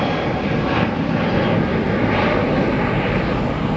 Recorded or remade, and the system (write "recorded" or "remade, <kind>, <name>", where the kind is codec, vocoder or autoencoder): recorded